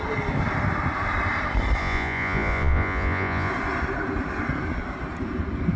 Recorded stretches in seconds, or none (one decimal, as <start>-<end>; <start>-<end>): 0.0-1.8; 3.5-5.8